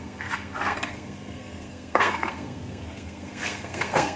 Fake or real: fake